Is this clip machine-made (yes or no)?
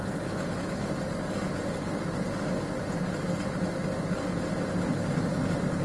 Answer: no